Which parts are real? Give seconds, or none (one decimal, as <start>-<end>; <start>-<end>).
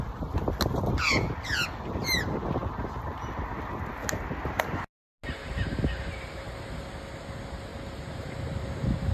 0.0-5.4; 6.9-7.7; 8.3-9.1